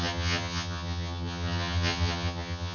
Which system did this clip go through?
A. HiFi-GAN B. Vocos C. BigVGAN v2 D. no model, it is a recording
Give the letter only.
A